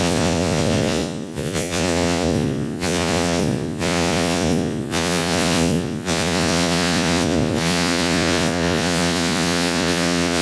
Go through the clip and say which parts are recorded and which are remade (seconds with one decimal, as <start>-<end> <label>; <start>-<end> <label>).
0.0-10.4 remade